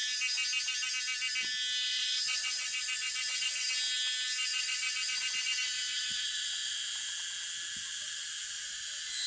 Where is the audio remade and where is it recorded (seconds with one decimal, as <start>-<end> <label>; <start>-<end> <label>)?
0.0-1.9 recorded; 1.9-3.7 remade; 3.7-4.4 recorded; 4.4-6.7 remade; 6.7-9.3 recorded